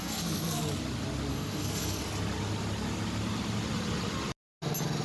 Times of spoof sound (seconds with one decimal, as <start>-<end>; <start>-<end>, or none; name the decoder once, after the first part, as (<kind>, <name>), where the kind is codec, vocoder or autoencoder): 0.0-0.6 (codec, SNAC); 1.3-2.0